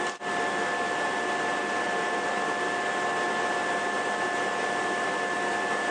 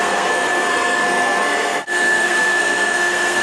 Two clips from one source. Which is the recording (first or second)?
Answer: first